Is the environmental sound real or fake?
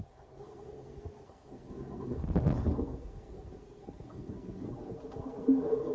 fake